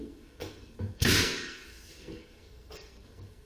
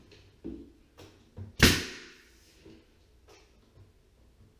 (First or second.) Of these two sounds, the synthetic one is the first